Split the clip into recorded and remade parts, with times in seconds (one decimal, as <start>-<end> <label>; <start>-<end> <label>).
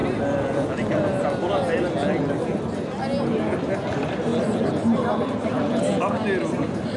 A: 0.0-7.0 recorded